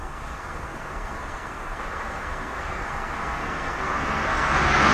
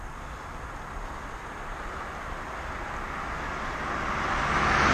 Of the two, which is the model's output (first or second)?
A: first